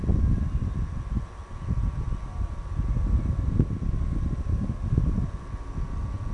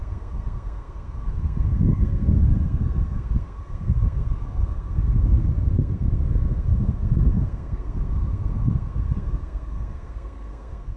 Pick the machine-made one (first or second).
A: second